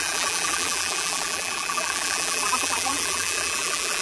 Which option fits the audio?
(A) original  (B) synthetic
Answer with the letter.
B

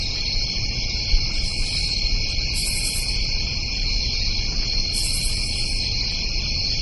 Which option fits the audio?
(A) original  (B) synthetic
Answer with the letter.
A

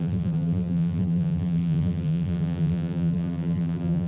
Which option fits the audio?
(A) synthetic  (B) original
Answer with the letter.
A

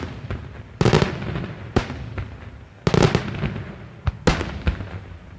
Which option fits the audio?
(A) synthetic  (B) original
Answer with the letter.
B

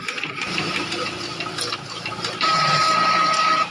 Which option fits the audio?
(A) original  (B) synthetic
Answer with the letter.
B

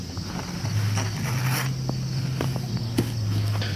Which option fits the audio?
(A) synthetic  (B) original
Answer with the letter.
B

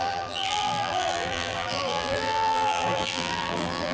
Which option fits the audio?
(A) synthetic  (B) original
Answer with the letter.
A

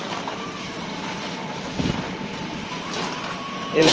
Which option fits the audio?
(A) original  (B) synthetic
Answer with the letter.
B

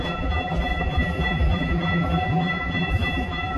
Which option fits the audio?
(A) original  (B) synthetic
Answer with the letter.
B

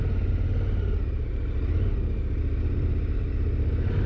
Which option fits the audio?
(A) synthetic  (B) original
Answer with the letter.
B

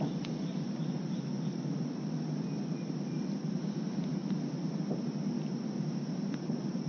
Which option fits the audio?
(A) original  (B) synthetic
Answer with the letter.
A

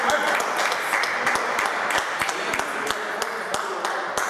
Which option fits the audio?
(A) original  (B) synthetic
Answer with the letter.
A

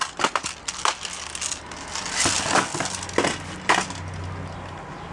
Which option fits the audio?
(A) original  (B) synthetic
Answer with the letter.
A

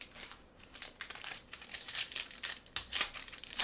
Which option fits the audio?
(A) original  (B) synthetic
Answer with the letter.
B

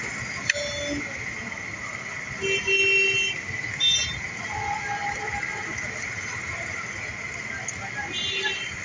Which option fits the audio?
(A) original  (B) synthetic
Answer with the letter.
A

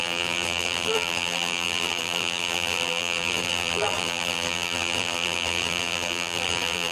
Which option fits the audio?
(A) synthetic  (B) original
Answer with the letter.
A